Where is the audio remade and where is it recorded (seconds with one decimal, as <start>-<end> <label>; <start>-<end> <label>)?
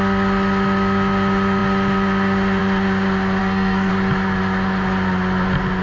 0.0-3.4 recorded; 3.4-3.9 remade; 3.9-5.8 recorded